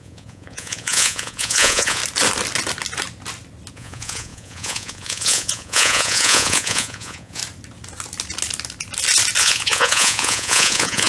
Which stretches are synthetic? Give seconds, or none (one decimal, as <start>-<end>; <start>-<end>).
0.0-2.0; 3.7-7.4; 9.4-11.1